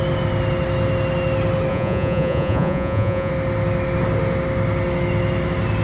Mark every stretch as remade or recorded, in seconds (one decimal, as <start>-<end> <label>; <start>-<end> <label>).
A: 0.0-1.7 recorded; 1.7-3.3 remade; 3.3-5.8 recorded